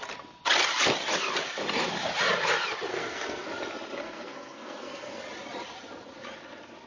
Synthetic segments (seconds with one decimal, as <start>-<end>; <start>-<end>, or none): 2.9-3.5; 4.0-5.2